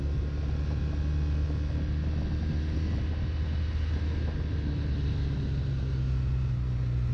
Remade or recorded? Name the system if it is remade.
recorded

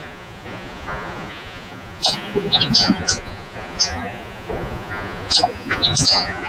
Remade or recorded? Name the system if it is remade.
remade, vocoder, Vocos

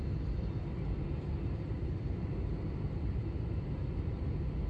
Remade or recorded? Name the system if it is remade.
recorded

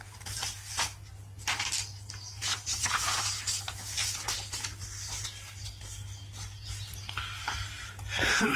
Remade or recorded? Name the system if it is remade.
recorded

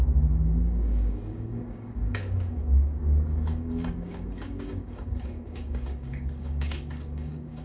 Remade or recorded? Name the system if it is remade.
remade, codec, DAC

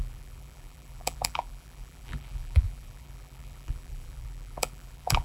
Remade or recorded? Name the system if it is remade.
remade, vocoder, BigVGAN v2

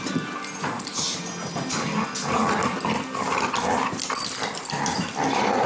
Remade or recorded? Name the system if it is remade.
recorded